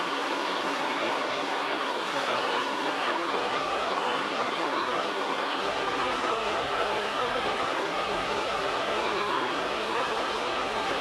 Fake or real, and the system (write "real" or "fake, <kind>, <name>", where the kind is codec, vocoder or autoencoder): fake, codec, SNAC